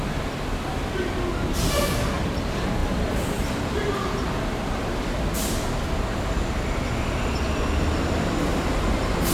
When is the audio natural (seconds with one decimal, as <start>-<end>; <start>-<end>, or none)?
0.0-9.3